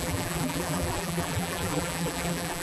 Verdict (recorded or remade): remade